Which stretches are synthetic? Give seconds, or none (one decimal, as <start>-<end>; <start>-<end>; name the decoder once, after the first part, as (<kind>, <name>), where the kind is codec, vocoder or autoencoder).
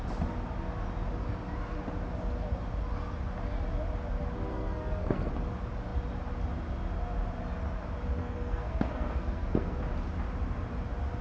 4.5-5.3 (codec, SNAC); 8.2-9.8